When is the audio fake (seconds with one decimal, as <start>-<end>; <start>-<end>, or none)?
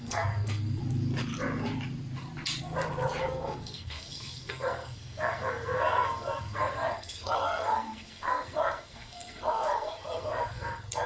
0.0-0.8; 3.2-11.1